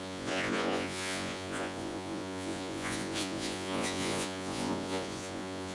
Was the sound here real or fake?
fake